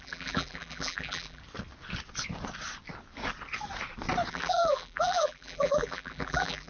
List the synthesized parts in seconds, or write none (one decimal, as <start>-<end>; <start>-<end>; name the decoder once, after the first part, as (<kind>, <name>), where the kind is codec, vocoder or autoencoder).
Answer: 0.0-1.4 (vocoder, BigVGAN v2); 4.3-6.7